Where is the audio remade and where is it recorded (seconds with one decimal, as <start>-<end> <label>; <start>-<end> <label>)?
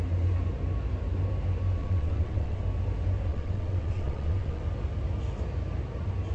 0.0-1.8 recorded; 1.8-2.6 remade; 2.6-3.3 recorded; 3.3-4.6 remade; 4.6-6.3 recorded